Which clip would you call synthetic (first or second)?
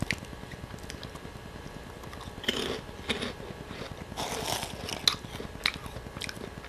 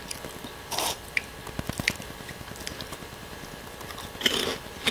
second